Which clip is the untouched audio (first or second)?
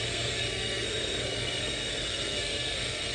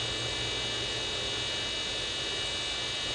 second